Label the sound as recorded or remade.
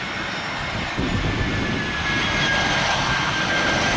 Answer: recorded